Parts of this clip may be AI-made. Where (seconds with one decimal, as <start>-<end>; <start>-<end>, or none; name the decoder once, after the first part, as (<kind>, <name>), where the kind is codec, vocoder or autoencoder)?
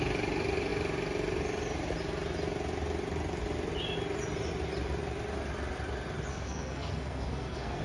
6.3-7.8 (codec, SNAC)